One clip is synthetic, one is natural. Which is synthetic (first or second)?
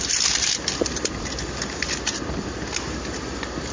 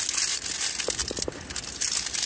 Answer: first